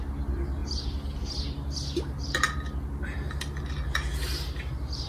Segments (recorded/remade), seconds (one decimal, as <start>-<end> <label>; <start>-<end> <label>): 0.0-5.1 recorded